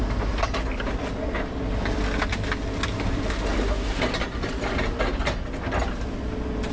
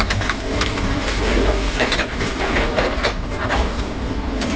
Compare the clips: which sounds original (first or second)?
first